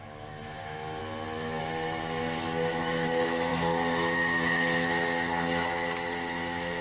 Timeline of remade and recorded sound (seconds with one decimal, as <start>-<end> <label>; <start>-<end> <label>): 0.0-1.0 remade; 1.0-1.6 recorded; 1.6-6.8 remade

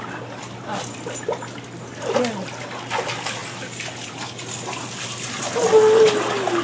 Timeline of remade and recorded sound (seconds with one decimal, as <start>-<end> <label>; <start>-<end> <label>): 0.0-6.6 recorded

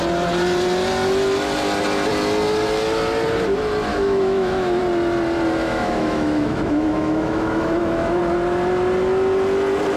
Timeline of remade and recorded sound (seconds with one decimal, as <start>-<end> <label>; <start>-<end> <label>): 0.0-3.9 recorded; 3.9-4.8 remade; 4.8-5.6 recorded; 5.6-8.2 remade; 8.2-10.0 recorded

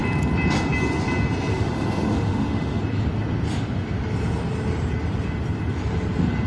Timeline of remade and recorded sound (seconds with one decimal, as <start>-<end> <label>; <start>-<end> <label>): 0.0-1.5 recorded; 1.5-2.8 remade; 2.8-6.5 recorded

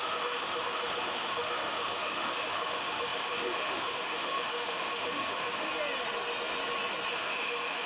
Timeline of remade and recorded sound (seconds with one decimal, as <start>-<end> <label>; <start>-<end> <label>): 0.0-5.7 remade; 5.7-7.1 recorded; 7.1-7.9 remade